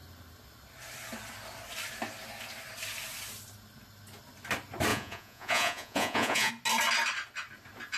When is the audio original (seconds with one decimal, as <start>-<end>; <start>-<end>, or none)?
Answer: 0.0-4.9; 6.5-8.0

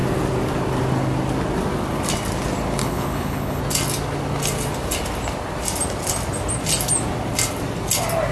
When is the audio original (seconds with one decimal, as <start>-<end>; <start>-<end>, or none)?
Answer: 0.0-2.8; 3.6-8.3

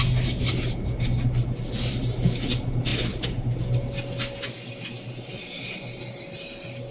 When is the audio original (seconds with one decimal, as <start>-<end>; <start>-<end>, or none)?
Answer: 0.0-6.9

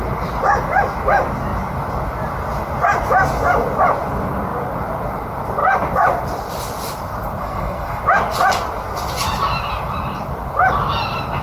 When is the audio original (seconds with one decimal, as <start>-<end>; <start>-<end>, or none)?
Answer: 0.0-7.4; 8.0-11.4

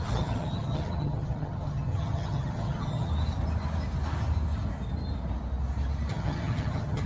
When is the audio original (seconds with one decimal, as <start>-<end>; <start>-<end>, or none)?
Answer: 3.1-6.1